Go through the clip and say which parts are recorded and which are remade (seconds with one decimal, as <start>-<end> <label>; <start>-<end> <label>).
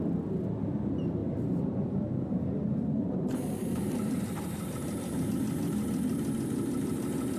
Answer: 0.0-1.2 recorded; 1.2-5.3 remade; 5.3-7.4 recorded